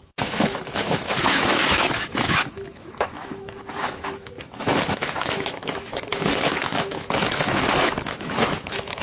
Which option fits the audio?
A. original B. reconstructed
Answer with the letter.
B